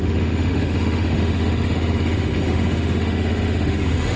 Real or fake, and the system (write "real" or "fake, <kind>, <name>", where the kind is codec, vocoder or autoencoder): fake, autoencoder, DAC-VAE